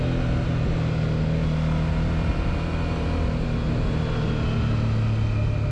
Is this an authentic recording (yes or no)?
yes